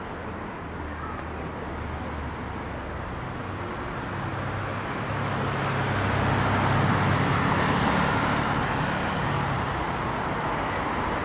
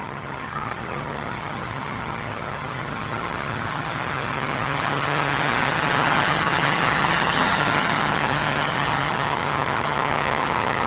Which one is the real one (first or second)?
first